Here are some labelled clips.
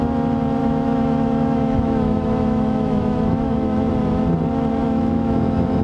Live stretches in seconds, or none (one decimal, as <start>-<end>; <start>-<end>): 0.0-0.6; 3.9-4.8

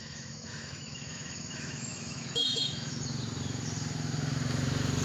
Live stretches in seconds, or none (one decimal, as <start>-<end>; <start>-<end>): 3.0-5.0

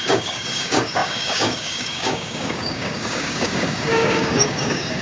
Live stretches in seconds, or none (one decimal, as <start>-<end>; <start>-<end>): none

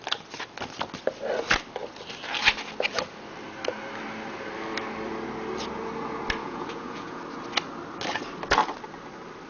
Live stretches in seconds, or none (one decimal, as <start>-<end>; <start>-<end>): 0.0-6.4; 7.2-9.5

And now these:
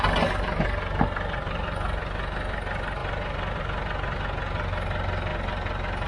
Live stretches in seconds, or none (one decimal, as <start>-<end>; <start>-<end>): 0.0-6.1